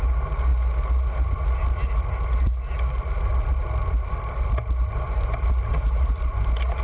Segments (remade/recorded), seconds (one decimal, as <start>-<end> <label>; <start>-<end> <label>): 0.0-5.7 recorded; 5.7-6.3 remade; 6.3-6.8 recorded